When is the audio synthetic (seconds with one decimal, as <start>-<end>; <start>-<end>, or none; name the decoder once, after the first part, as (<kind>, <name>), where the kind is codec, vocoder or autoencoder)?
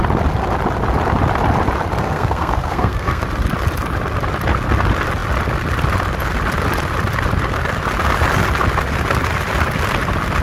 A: 2.0-3.2 (codec, SNAC)